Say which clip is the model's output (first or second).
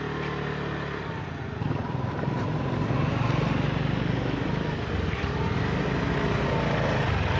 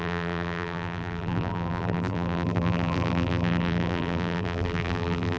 second